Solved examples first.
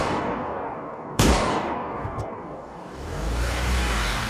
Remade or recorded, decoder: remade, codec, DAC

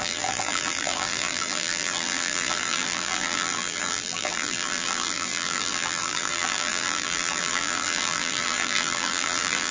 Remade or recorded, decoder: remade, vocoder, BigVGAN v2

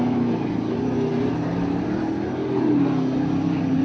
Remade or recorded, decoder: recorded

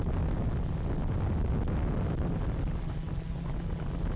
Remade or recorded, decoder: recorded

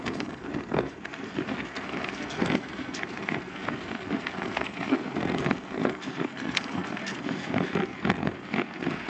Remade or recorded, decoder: remade, codec, SNAC